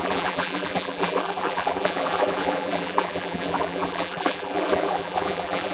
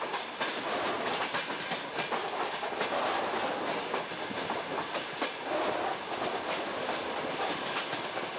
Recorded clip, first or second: second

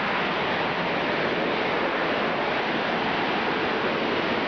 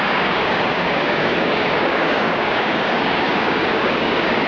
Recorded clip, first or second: first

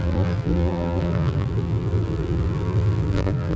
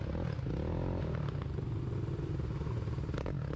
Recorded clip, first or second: second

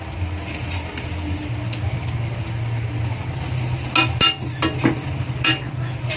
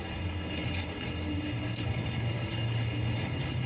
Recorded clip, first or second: first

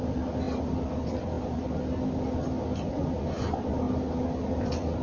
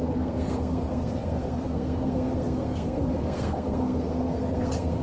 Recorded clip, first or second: first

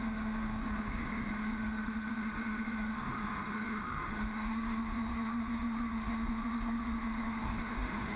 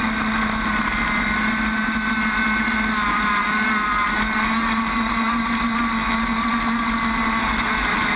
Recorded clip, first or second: second